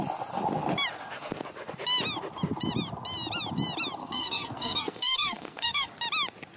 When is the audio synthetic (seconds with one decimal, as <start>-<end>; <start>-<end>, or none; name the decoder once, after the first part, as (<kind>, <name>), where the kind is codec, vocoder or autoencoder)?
4.0-5.9 (codec, SNAC)